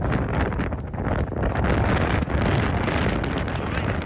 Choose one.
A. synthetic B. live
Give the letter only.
B